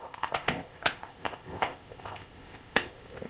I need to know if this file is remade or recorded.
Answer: remade